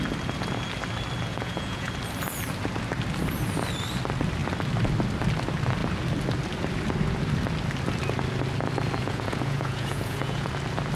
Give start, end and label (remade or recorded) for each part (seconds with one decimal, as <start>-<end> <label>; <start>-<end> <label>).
0.0-1.3 recorded; 1.3-1.9 remade; 1.9-9.0 recorded; 9.0-10.5 remade; 10.5-11.0 recorded